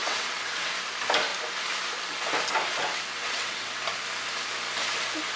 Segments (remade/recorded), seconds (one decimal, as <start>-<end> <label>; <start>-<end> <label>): 0.0-0.7 remade; 0.7-3.1 recorded; 3.1-3.7 remade; 3.7-5.4 recorded